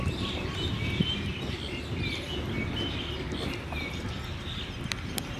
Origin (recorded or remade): recorded